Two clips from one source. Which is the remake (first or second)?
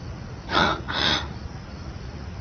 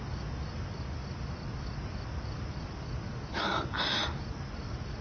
first